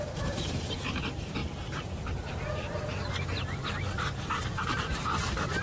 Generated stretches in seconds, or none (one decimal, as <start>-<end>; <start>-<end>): 0.0-1.4; 2.3-5.6